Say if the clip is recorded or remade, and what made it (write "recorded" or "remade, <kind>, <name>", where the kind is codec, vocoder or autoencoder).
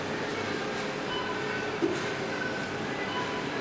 recorded